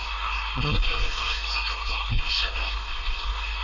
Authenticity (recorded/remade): remade